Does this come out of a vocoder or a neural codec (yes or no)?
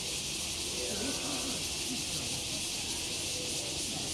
no